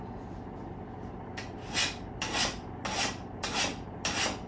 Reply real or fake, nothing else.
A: real